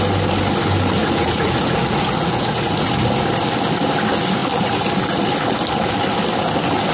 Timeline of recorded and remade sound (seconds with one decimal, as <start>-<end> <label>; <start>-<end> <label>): 0.0-1.0 recorded; 1.0-2.9 remade; 2.9-6.9 recorded